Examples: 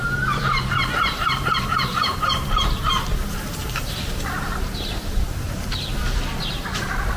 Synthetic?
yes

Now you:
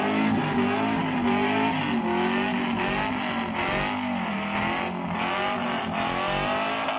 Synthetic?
no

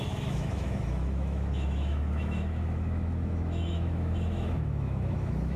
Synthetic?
yes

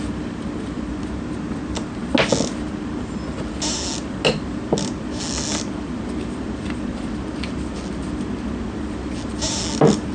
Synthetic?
no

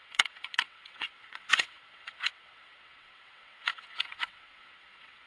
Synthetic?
yes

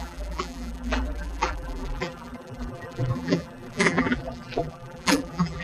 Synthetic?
yes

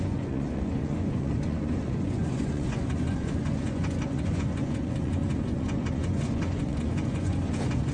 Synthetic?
yes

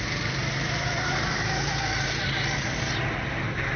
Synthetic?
no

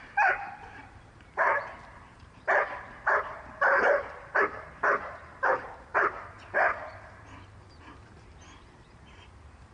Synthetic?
yes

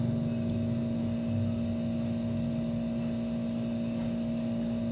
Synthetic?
no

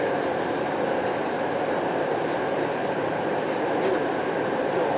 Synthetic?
yes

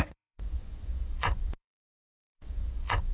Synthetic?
yes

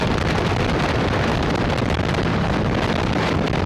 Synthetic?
no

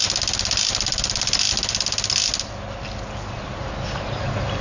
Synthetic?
no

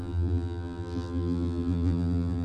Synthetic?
yes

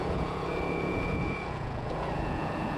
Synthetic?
yes